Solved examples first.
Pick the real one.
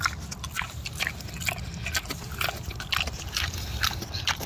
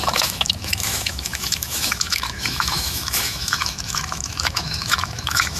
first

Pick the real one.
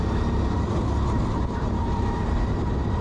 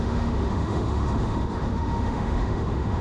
first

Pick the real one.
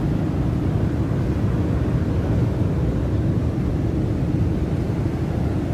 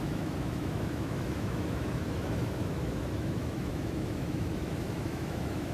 first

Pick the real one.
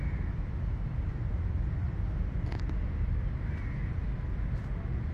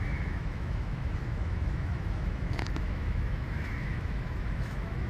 first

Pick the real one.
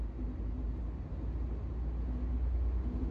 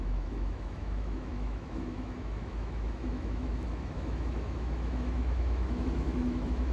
first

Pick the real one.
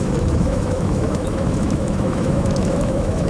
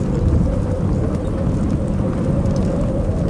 second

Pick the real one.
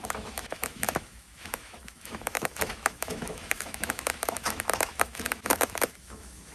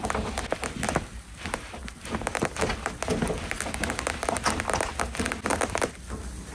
second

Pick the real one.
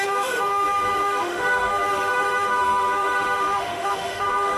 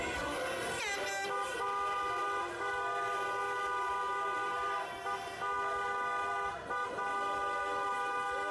second